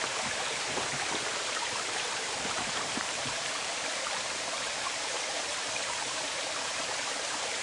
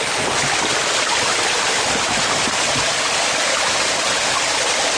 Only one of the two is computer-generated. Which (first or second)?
first